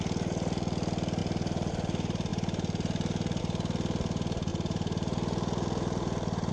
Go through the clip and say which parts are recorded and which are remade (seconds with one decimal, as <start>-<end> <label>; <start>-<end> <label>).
0.0-1.2 recorded; 1.2-1.7 remade; 1.7-2.3 recorded; 2.3-3.4 remade; 3.4-4.5 recorded; 4.5-6.5 remade